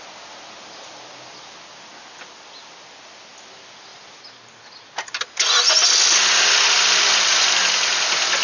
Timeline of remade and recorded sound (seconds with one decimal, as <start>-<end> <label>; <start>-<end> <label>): 0.0-8.4 recorded

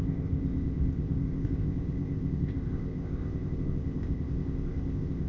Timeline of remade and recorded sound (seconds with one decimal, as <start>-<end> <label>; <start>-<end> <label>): 0.0-5.3 remade

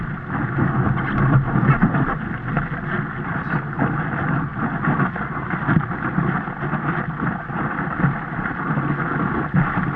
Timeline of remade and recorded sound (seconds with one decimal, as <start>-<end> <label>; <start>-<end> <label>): 0.0-10.0 recorded

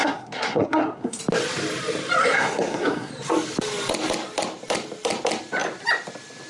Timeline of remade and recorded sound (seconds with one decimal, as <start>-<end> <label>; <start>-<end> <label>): 0.0-1.2 remade; 1.2-2.2 recorded; 2.2-3.1 remade; 3.1-6.5 recorded

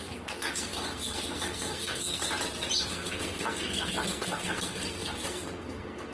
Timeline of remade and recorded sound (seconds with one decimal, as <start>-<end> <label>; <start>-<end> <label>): 0.0-2.2 remade; 2.2-2.8 recorded; 2.8-6.1 remade

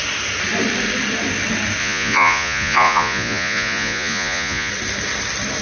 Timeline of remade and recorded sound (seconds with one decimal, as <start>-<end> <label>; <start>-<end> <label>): 0.0-1.8 recorded; 1.8-4.7 remade; 4.7-5.6 recorded

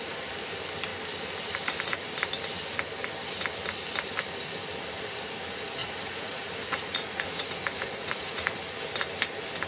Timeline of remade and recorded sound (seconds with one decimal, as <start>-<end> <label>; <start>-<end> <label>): 0.0-5.8 recorded; 5.8-8.6 remade; 8.6-9.7 recorded